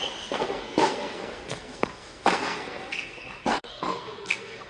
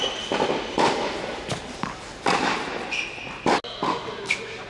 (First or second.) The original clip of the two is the second